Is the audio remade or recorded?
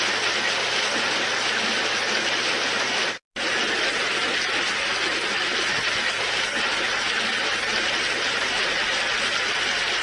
recorded